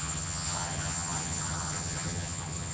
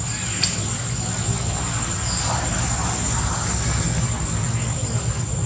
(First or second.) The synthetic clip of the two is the first